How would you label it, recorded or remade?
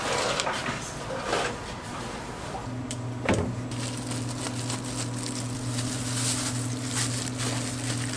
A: recorded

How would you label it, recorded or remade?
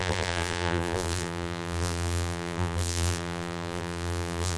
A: remade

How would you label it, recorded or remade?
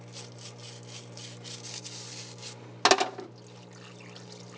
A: recorded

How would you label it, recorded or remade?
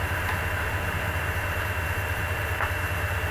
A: remade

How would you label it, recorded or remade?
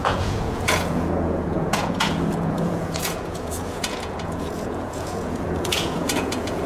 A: remade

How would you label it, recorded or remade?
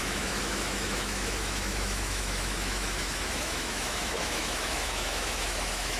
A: remade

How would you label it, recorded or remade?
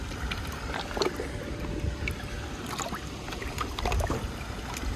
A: recorded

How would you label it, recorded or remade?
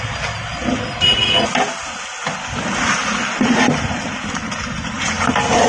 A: recorded